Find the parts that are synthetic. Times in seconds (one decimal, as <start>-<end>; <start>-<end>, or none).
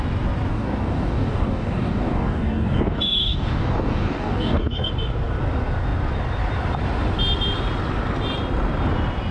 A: 0.5-4.9